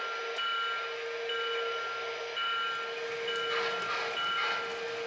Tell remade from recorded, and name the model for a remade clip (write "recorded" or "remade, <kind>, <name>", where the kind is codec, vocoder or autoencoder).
recorded